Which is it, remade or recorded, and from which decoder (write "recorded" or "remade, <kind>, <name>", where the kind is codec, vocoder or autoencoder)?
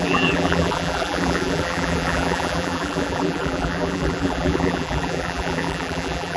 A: remade, vocoder, BigVGAN v2